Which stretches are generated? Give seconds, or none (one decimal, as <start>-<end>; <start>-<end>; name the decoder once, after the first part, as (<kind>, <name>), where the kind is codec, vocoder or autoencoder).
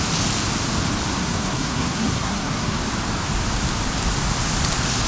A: 1.2-2.8 (codec, SNAC)